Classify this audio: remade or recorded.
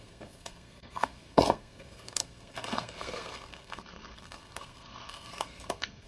remade